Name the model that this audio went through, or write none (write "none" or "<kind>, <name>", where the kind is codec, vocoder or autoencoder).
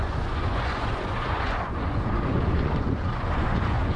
vocoder, Vocos